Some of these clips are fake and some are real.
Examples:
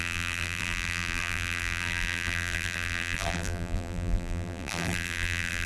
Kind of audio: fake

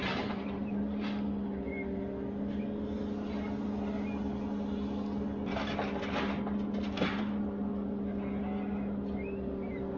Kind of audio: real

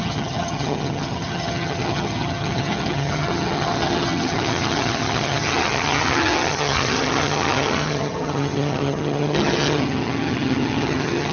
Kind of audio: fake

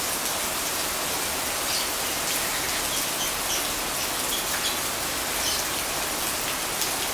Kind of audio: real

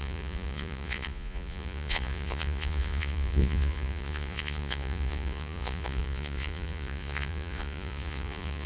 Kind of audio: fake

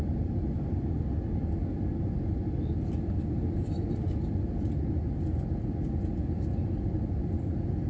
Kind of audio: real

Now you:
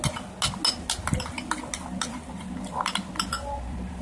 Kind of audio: real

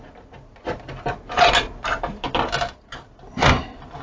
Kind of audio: real